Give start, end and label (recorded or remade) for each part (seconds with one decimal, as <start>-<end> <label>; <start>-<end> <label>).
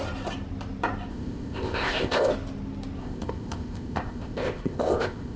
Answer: 0.0-1.1 recorded; 1.1-2.3 remade; 2.3-3.0 recorded; 3.0-5.4 remade